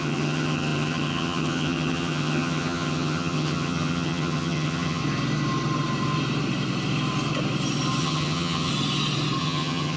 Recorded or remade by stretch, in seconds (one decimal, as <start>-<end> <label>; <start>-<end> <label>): 0.0-5.0 remade; 5.0-8.0 recorded; 8.0-8.7 remade; 8.7-9.4 recorded; 9.4-10.0 remade